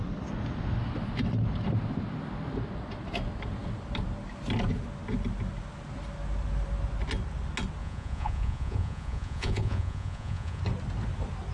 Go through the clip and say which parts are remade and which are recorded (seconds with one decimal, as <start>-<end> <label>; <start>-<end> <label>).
0.0-7.8 recorded; 7.8-10.6 remade; 10.6-11.5 recorded